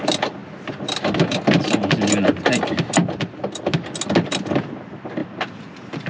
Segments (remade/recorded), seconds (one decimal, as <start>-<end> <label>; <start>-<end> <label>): 0.0-5.2 recorded; 5.2-6.1 remade